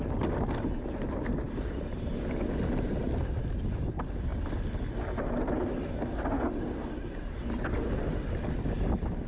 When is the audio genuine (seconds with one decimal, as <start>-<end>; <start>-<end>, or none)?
0.0-9.3